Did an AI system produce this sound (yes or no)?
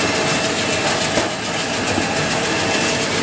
no